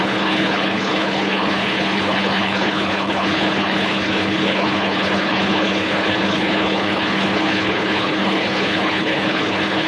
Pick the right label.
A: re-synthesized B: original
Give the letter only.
A